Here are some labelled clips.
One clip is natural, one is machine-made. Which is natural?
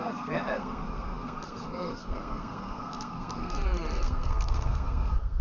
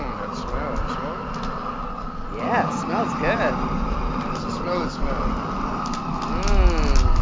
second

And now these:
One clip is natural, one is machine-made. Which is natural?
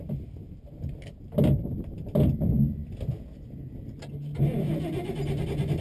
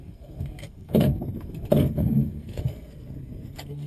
first